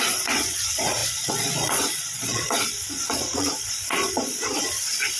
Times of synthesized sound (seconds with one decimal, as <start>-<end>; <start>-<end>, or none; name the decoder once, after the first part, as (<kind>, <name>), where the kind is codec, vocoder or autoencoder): 0.0-5.2 (vocoder, Vocos)